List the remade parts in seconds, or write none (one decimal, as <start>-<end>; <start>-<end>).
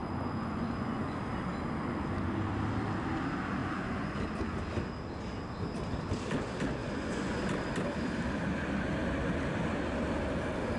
0.0-1.2; 3.6-4.2; 6.8-7.4